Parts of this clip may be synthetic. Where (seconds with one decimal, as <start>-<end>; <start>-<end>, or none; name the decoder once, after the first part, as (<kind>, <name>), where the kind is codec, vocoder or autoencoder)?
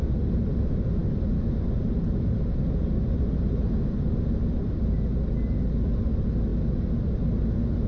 none